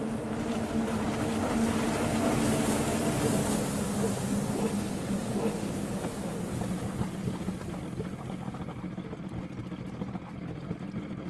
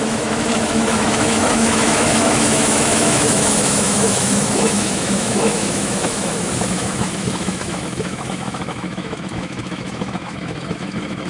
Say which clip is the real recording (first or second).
first